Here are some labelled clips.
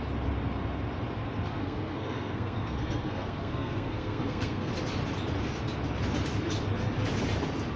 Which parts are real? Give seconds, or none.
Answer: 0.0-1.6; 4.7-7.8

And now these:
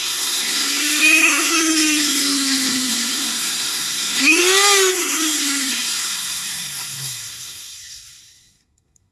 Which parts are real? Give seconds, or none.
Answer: 4.4-4.9